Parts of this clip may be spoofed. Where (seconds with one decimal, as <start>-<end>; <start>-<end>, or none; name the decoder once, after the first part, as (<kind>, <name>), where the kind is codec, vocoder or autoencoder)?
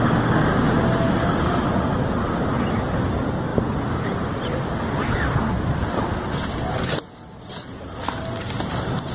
none